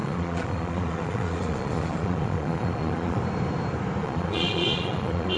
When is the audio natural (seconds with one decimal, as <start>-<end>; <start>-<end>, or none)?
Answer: 3.2-4.0